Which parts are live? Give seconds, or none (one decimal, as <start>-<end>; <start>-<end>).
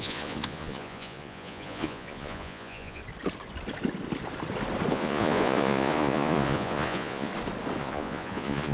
3.0-4.9; 7.3-7.8